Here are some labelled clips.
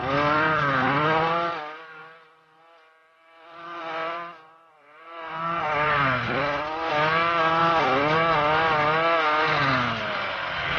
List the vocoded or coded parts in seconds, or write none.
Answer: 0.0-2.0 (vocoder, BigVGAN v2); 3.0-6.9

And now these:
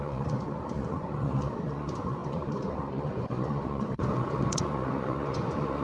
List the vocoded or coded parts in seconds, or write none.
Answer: 0.0-5.8 (vocoder, Vocos)